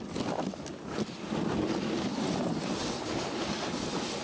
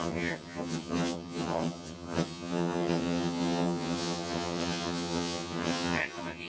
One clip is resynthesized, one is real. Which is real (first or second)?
first